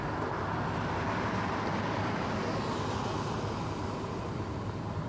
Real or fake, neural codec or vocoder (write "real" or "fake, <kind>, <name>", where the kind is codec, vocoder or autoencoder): real